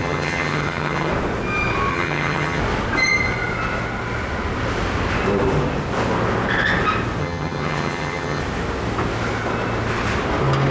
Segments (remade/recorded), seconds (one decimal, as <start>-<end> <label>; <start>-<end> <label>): 0.0-1.1 remade; 1.1-1.9 recorded; 1.9-2.6 remade; 2.6-7.2 recorded; 7.2-8.4 remade; 8.4-10.7 recorded